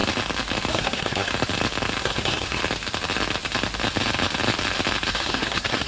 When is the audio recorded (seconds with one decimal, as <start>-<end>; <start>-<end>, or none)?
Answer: 0.0-0.7; 1.3-2.0; 2.6-5.1

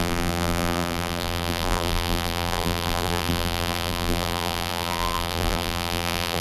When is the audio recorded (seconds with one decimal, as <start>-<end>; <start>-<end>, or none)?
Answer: none

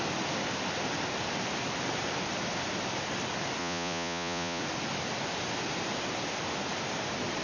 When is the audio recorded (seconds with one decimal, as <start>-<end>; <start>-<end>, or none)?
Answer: 0.0-3.6; 4.6-7.4

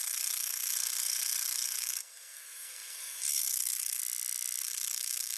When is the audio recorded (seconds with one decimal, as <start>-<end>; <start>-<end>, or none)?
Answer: 4.0-4.6

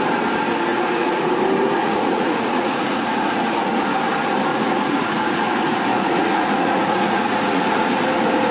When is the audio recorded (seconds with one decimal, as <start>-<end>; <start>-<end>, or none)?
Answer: 0.0-0.7; 1.3-1.8; 3.8-4.5; 5.5-5.9; 7.9-8.5

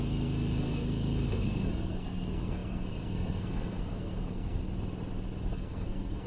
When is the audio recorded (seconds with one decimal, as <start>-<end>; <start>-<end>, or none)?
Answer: 4.6-5.5